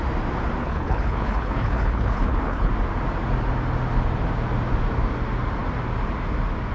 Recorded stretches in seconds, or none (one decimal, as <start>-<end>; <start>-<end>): 0.0-0.6; 2.7-6.7